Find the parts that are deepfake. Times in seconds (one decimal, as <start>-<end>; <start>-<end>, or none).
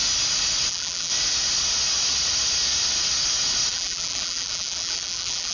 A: 0.7-1.1; 3.7-5.5